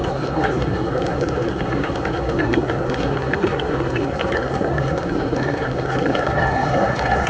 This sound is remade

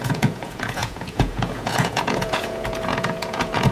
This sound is remade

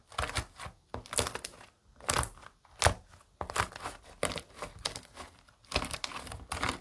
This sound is recorded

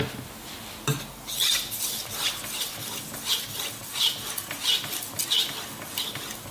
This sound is recorded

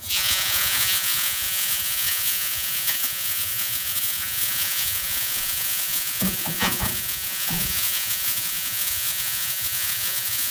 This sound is remade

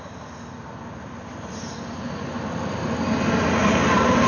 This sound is recorded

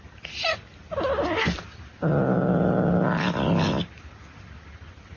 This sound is recorded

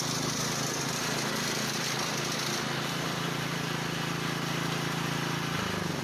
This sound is recorded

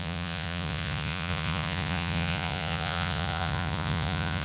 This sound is remade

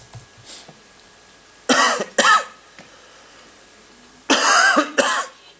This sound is recorded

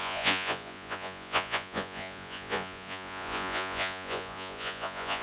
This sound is remade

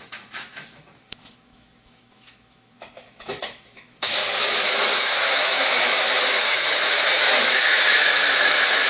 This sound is remade